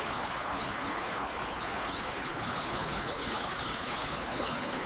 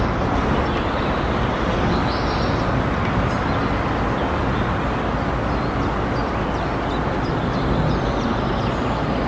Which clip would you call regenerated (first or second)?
first